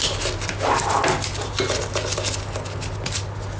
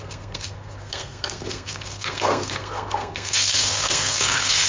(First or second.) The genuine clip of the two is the first